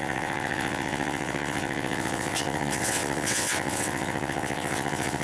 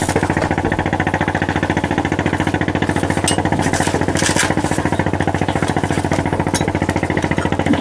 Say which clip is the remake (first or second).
first